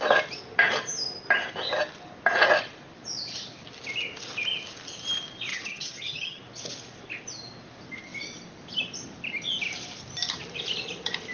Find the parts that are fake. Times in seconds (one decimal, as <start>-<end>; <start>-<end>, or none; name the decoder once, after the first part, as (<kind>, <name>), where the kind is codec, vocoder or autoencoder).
5.5-6.4 (vocoder, HiFi-GAN)